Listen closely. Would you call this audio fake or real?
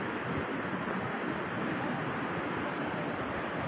real